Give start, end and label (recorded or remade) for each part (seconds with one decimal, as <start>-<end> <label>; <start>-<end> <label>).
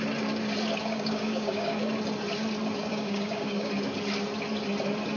0.0-0.8 recorded; 0.8-1.8 remade; 1.8-2.9 recorded; 2.9-3.7 remade; 3.7-5.2 recorded